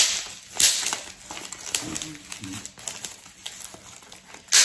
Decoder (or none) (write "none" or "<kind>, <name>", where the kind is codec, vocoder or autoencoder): none